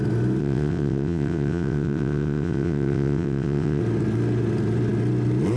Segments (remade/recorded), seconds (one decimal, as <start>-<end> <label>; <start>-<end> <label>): 0.0-0.4 recorded; 0.4-3.8 remade; 3.8-5.6 recorded